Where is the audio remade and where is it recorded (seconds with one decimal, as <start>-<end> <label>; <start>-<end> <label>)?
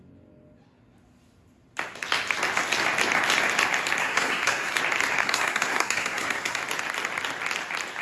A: 0.0-4.0 recorded; 4.0-4.8 remade; 4.8-5.2 recorded; 5.2-6.6 remade; 6.6-8.0 recorded